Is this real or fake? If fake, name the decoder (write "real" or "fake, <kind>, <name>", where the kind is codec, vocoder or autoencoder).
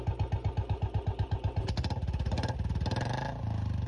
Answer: real